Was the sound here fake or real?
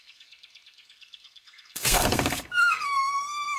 fake